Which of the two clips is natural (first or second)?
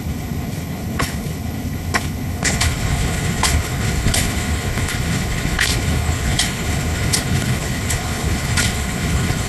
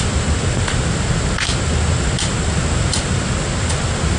second